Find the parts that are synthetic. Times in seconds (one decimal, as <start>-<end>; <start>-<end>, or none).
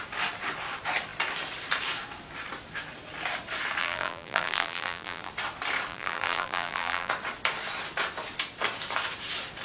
3.8-5.3; 5.9-7.1